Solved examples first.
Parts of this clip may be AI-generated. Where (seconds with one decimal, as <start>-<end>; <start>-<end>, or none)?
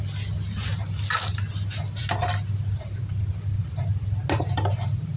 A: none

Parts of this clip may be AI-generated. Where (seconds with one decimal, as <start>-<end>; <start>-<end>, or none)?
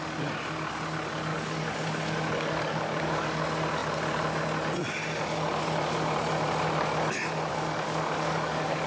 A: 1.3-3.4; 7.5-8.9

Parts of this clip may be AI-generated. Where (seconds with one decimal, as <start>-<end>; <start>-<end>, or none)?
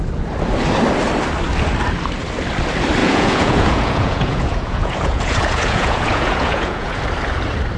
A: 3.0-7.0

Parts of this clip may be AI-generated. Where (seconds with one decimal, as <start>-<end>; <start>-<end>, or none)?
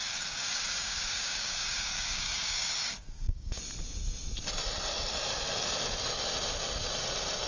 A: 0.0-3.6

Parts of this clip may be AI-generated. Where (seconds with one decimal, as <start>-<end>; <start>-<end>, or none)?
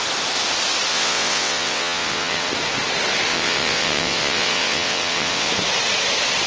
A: 0.9-2.5; 3.3-5.5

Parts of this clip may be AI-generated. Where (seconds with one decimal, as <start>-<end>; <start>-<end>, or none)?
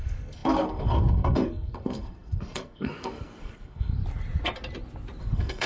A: 0.0-4.0; 5.2-5.7